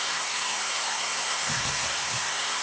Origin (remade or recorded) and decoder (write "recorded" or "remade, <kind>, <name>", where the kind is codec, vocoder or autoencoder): remade, codec, SNAC